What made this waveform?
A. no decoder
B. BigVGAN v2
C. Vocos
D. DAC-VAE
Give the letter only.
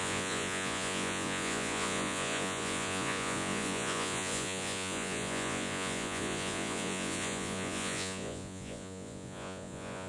C